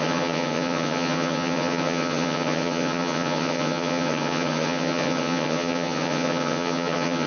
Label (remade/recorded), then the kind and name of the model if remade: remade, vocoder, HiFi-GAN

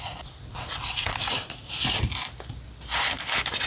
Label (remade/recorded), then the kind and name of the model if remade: recorded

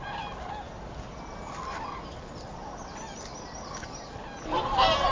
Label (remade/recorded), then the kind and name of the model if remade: recorded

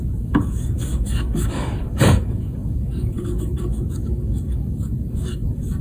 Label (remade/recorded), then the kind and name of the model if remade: remade, codec, DAC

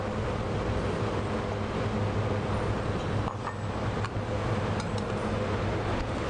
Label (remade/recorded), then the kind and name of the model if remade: recorded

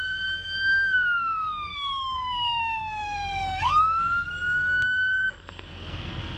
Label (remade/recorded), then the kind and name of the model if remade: remade, codec, SNAC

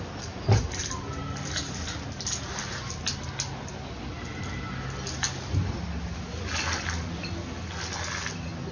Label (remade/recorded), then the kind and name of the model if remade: recorded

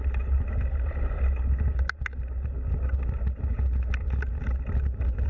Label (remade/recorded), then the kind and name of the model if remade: recorded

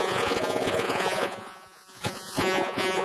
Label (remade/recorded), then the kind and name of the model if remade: remade, vocoder, Vocos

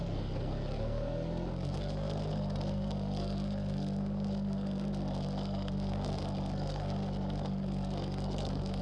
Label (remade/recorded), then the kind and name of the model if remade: remade, codec, SNAC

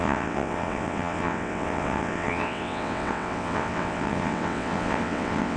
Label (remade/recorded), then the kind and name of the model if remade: remade, vocoder, WaveNeXt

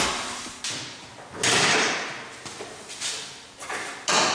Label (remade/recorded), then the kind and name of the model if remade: recorded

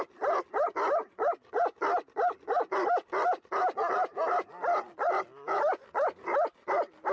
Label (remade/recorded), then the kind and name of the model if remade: recorded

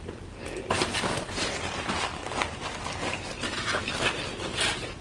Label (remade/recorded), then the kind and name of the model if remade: recorded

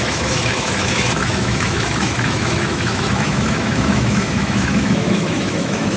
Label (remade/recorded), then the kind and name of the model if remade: remade, autoencoder, DAC-VAE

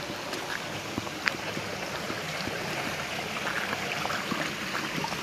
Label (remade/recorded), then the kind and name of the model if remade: recorded